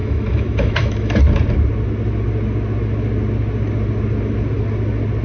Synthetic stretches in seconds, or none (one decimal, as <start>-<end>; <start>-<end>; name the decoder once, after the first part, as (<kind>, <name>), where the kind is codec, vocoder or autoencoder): 0.0-1.2 (autoencoder, DAC-VAE)